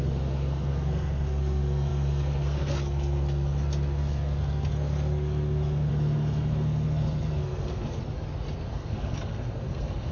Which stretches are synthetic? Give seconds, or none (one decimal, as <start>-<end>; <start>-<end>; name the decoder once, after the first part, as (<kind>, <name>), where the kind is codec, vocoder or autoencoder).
0.0-8.0 (codec, SNAC); 8.6-10.1